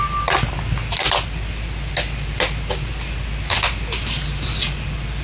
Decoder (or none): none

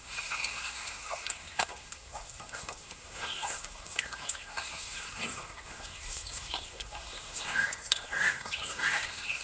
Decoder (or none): codec, SNAC